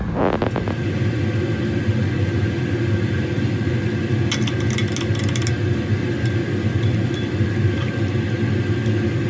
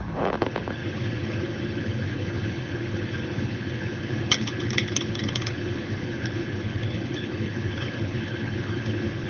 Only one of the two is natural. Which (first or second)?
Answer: first